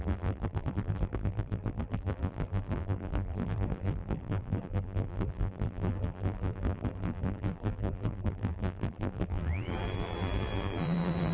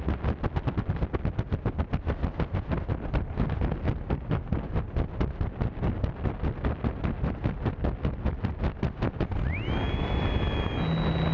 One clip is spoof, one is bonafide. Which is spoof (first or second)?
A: first